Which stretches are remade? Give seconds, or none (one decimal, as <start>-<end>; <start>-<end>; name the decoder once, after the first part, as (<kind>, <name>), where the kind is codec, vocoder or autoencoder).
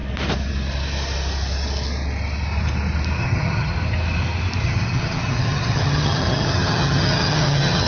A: 3.2-3.7 (vocoder, HiFi-GAN); 4.6-7.9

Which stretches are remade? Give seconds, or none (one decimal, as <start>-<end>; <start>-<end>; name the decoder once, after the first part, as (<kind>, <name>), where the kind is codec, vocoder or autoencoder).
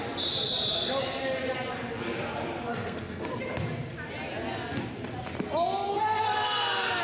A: 2.7-3.3 (codec, SNAC); 5.9-7.0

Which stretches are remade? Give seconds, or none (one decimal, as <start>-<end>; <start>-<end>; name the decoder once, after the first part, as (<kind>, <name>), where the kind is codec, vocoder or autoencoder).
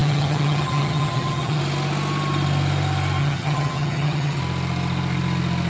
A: 0.0-1.6 (vocoder, HiFi-GAN); 3.2-4.4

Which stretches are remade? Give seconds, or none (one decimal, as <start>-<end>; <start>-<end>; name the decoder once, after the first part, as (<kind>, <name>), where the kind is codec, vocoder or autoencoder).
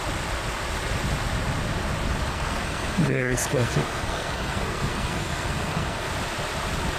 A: 2.3-6.1 (codec, SNAC)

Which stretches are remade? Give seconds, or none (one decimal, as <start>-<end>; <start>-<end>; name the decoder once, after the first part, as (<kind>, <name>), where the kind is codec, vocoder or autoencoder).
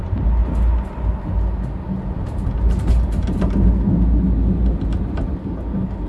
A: none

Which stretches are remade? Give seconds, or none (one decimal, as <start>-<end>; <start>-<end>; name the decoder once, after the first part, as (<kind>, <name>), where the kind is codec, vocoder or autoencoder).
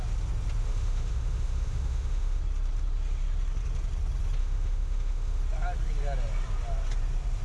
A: 0.6-2.4 (autoencoder, DAC-VAE); 4.4-5.4